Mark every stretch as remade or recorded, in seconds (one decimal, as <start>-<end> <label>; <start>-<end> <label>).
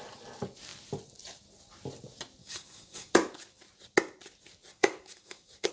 0.0-2.4 recorded; 2.4-3.1 remade; 3.1-4.7 recorded; 4.7-5.7 remade